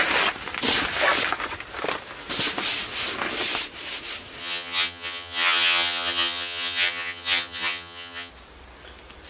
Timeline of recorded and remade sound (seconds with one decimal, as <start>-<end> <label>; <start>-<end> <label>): 0.0-4.4 recorded; 4.4-8.3 remade; 8.3-9.3 recorded